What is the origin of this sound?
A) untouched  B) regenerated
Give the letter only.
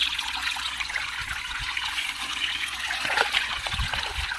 B